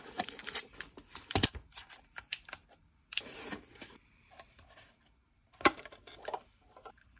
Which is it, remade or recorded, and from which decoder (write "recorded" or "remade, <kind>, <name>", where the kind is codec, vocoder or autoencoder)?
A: remade, vocoder, BigVGAN v2